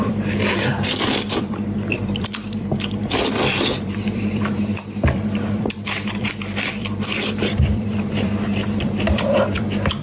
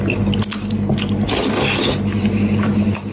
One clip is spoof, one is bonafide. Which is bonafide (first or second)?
second